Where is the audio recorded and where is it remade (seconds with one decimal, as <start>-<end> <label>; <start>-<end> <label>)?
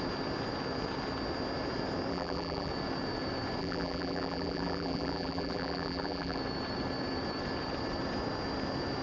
0.0-2.1 recorded; 2.1-2.7 remade; 2.7-3.6 recorded; 3.6-6.4 remade; 6.4-9.0 recorded